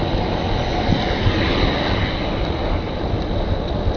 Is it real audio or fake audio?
real